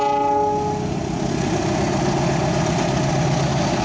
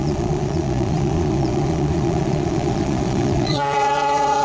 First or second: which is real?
first